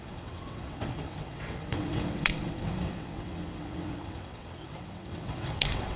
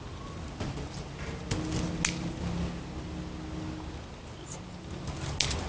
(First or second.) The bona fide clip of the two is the second